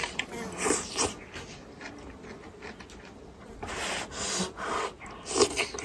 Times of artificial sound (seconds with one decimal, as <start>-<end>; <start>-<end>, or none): none